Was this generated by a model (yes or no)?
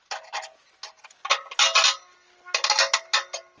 no